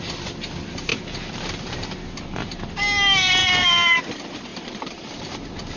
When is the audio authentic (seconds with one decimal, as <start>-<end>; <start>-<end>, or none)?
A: 0.0-0.9; 2.7-3.4; 4.0-4.5